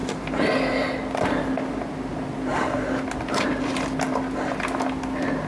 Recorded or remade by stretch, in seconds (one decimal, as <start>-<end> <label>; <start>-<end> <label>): 0.0-5.5 recorded